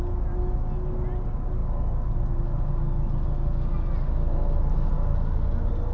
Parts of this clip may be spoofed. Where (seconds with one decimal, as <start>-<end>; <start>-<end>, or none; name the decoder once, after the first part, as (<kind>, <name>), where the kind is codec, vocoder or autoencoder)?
none